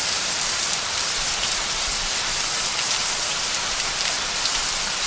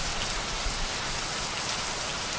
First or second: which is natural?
second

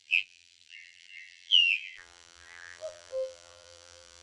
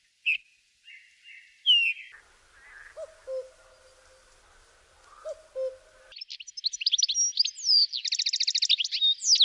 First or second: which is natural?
second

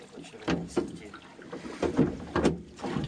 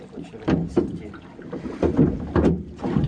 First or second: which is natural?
first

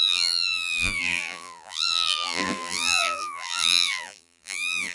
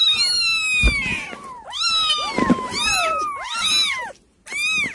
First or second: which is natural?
second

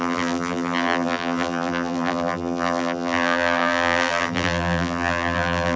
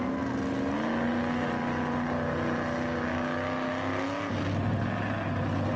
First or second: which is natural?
second